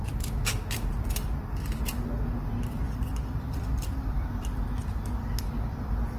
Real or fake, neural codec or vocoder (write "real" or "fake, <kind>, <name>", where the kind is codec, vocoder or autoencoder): real